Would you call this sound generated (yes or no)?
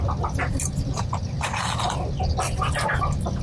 no